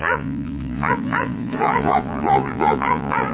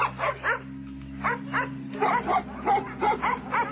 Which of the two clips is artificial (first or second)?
first